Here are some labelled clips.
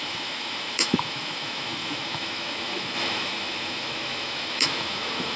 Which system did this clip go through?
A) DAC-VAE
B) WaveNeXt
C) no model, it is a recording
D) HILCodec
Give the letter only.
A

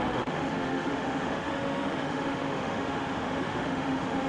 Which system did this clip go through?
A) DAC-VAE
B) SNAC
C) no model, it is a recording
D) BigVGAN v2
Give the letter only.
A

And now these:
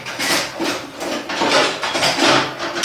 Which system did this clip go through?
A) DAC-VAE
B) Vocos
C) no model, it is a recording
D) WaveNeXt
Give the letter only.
C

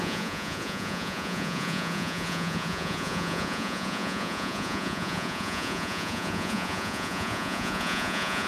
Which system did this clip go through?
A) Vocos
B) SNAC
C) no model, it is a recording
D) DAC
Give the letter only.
A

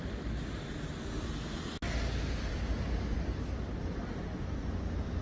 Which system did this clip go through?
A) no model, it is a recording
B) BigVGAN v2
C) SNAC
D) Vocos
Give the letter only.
A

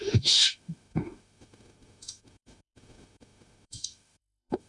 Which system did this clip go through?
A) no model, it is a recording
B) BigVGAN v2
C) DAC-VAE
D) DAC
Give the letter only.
C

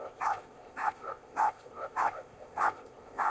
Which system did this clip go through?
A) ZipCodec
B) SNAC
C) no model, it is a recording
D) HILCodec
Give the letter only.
A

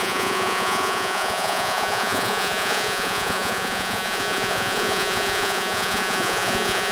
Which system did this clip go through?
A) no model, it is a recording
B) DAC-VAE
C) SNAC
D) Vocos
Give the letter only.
D